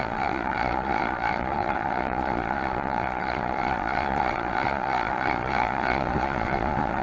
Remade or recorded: remade